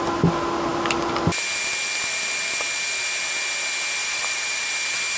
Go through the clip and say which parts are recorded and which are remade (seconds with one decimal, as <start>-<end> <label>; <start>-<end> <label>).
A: 0.0-4.0 recorded; 4.0-4.6 remade; 4.6-5.2 recorded

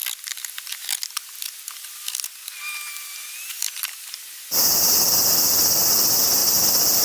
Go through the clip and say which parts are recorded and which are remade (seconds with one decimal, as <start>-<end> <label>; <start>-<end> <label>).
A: 0.0-7.0 recorded

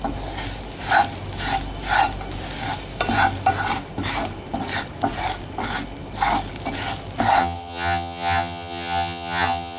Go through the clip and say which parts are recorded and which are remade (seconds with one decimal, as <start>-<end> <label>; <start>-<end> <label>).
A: 0.0-7.4 recorded; 7.4-9.8 remade

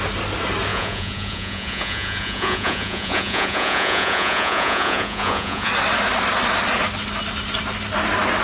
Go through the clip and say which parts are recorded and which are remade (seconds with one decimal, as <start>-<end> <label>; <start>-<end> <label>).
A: 0.0-0.7 recorded; 0.7-5.7 remade; 5.7-8.4 recorded